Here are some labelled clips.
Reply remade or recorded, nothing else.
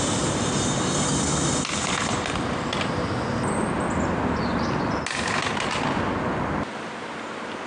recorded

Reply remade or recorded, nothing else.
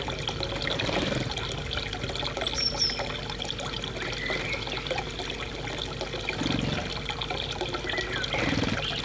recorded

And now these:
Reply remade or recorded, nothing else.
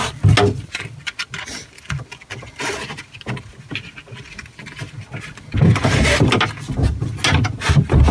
recorded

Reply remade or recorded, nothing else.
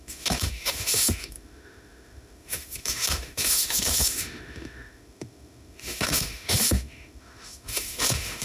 remade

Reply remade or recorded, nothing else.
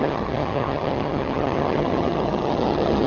remade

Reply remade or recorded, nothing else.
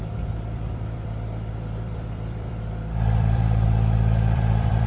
remade